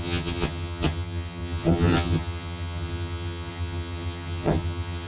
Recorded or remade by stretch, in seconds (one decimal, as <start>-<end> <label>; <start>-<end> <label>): 0.0-5.1 remade